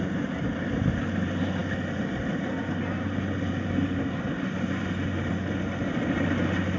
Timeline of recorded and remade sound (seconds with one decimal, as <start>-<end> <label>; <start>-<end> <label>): 0.0-6.8 recorded